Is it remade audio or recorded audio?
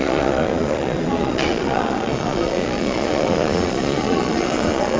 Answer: remade